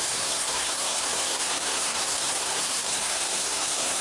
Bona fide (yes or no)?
no